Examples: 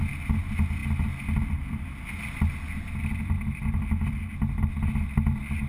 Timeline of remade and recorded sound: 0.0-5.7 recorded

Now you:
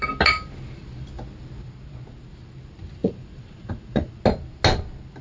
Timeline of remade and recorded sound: 0.0-3.0 recorded; 3.0-4.1 remade; 4.1-5.2 recorded

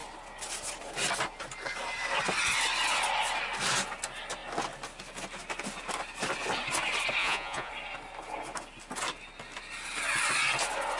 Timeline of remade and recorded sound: 0.0-7.2 recorded; 7.2-7.7 remade; 7.7-11.0 recorded

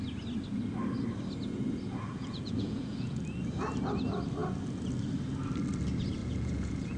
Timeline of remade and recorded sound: 0.0-2.1 recorded; 2.1-3.2 remade; 3.2-6.2 recorded; 6.2-7.0 remade